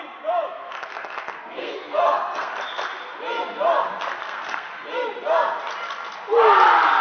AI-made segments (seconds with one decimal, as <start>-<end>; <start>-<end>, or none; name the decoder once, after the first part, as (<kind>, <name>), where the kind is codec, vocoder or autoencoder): 0.5-2.5 (codec, SNAC); 4.2-4.7